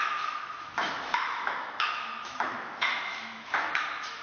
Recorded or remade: remade